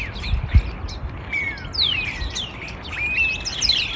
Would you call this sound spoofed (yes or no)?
no